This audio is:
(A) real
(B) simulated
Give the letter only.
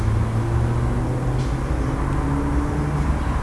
A